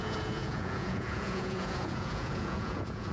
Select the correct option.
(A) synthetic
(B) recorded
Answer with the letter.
A